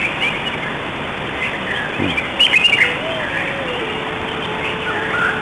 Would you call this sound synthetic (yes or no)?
no